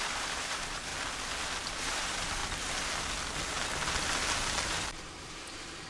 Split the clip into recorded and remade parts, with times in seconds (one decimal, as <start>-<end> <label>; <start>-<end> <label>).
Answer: 0.0-0.9 remade; 0.9-1.7 recorded; 1.7-2.4 remade; 2.4-4.6 recorded; 4.6-5.9 remade